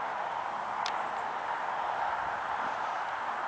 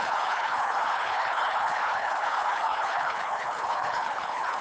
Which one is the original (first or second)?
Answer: first